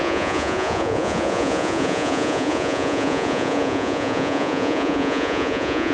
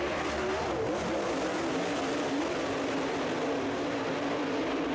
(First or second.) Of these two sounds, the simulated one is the first